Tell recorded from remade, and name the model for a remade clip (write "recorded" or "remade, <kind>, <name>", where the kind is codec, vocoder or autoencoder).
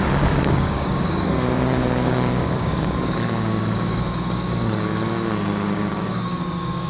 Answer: remade, codec, DAC